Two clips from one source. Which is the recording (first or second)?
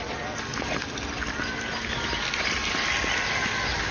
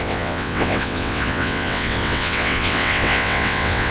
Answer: first